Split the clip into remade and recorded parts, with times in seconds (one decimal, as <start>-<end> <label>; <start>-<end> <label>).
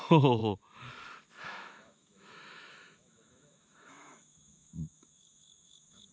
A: 0.0-0.4 remade; 0.4-1.3 recorded; 1.3-6.1 remade